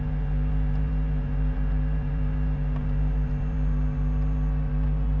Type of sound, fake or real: fake